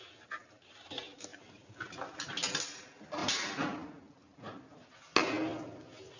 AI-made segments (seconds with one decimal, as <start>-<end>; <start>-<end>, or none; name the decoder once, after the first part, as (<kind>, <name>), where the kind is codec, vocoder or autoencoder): none